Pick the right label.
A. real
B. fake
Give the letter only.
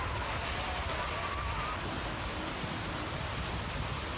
A